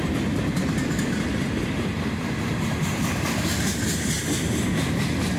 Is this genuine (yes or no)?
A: yes